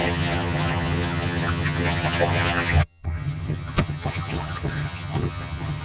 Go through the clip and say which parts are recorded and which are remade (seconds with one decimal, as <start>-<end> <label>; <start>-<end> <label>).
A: 0.0-5.8 remade